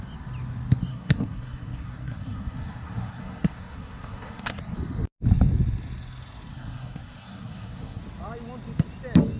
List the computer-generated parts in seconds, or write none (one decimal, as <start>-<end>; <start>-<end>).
0.9-4.6; 6.5-8.0